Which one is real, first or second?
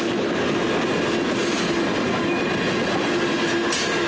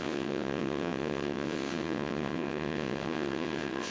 first